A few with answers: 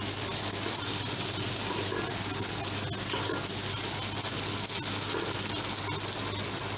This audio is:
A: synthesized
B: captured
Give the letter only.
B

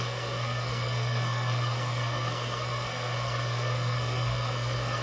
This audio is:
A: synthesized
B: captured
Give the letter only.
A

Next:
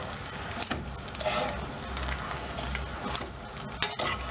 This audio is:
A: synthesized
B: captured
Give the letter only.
B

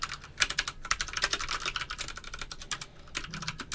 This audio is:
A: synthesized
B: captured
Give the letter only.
B